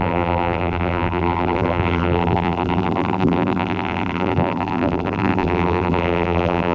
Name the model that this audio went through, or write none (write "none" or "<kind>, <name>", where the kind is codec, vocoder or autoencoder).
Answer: vocoder, BigVGAN v2